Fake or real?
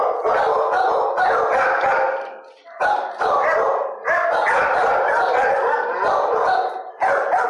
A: real